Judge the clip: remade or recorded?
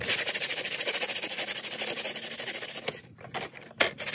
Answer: recorded